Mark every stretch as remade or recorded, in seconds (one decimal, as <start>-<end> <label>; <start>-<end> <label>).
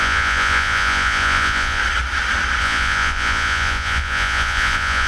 0.0-1.8 remade; 1.8-2.6 recorded; 2.6-5.1 remade